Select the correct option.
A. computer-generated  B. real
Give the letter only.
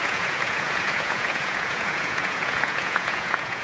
A